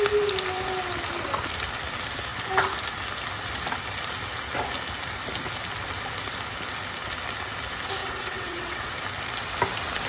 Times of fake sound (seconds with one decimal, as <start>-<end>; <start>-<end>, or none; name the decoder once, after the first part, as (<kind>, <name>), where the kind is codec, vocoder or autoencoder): 8.0-8.9 (vocoder, WaveNeXt)